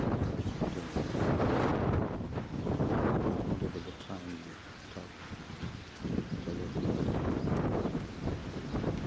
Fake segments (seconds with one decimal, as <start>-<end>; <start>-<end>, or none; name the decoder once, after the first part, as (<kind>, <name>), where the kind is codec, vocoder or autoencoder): none